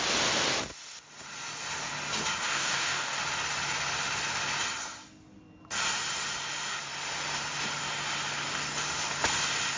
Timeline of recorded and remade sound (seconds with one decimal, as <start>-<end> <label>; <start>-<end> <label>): 0.0-2.4 recorded; 2.4-3.2 remade; 3.2-9.8 recorded